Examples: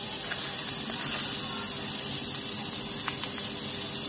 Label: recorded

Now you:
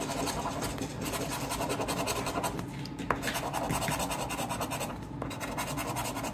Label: recorded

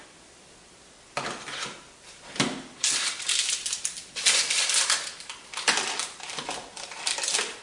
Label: remade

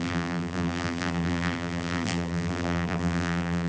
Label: remade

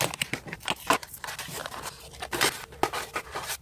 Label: recorded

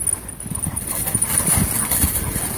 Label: recorded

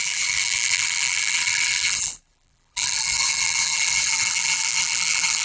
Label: remade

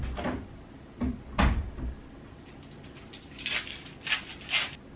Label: recorded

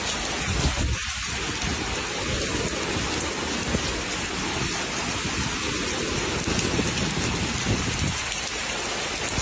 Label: recorded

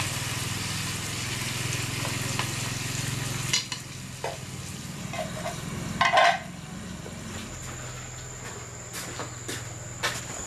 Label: recorded